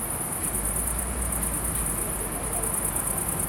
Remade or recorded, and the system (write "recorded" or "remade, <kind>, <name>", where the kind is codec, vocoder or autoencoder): recorded